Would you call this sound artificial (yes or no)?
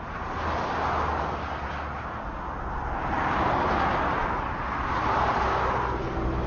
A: no